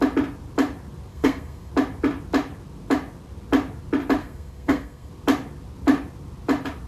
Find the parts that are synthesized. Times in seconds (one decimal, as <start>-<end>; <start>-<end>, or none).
1.1-1.7; 4.2-5.1